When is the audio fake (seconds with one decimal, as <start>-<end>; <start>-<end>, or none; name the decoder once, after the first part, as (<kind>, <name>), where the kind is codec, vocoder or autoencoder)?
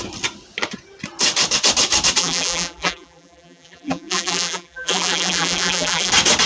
2.2-6.1 (vocoder, BigVGAN v2)